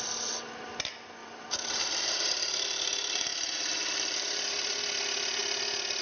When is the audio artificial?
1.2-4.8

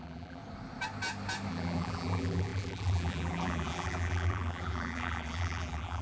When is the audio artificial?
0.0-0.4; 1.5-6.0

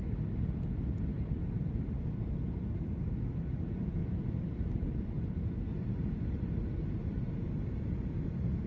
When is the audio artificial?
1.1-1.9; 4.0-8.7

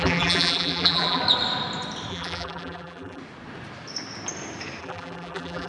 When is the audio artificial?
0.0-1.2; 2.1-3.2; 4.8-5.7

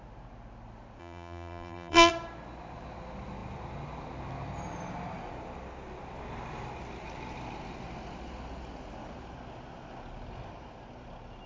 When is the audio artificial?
1.0-2.1

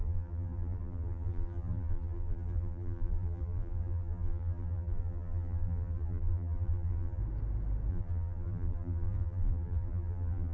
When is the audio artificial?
0.0-7.2; 7.9-10.5